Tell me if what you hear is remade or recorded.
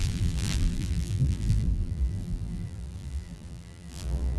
remade